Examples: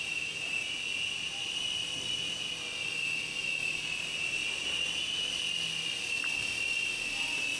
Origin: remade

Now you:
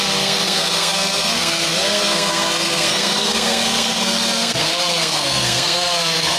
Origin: remade